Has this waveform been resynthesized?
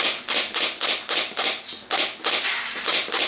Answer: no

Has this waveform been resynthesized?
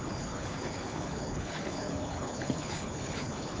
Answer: yes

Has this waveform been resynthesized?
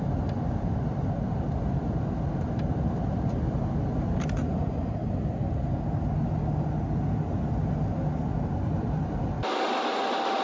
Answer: no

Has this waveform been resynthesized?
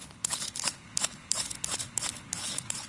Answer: yes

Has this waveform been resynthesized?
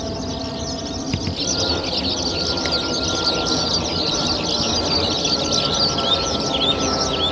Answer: no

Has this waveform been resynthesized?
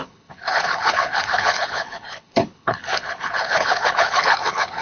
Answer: yes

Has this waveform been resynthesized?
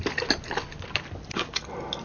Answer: no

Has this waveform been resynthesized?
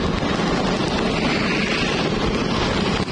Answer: no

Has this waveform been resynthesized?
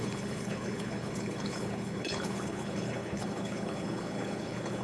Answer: yes